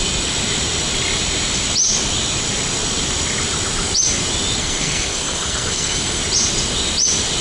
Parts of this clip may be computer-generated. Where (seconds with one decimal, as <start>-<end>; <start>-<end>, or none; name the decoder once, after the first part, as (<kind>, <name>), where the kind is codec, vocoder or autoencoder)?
4.6-6.2 (codec, SNAC)